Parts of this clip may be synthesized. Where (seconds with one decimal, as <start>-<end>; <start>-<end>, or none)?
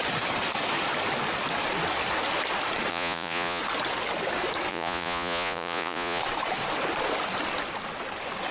2.9-3.6; 4.7-6.2